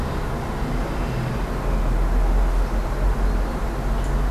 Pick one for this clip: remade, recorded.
recorded